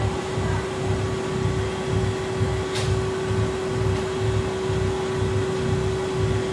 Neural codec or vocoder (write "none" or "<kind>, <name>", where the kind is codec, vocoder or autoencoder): none